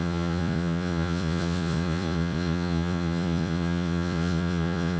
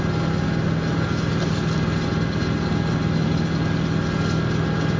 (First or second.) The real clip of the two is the second